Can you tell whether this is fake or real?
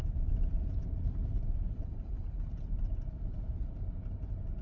fake